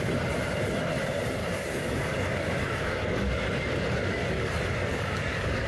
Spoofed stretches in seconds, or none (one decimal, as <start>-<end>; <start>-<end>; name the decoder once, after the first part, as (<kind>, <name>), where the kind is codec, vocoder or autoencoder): 1.4-4.5 (codec, DAC); 4.9-5.7

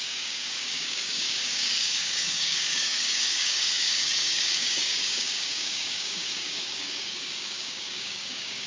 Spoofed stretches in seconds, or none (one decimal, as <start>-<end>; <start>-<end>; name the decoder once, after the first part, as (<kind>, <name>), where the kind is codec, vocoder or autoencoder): 0.0-8.7 (codec, DAC)

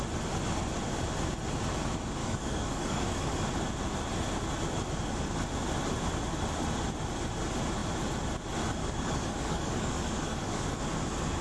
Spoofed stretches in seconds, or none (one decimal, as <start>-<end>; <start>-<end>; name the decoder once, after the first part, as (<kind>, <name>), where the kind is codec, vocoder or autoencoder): 2.2-3.3 (codec, DAC); 8.8-10.8

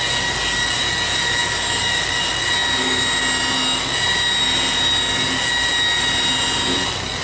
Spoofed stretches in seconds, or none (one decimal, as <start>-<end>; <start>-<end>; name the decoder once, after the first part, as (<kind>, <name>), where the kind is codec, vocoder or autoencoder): none